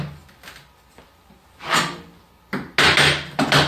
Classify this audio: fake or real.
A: real